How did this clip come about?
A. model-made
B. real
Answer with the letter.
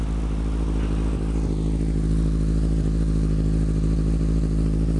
B